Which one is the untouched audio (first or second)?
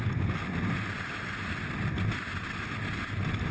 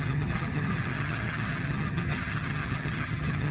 first